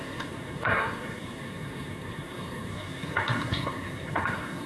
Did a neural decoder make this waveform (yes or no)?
yes